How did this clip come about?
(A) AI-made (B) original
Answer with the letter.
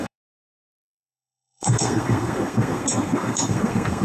A